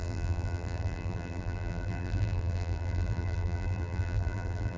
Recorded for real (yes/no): no